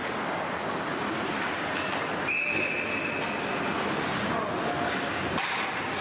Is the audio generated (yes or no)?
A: no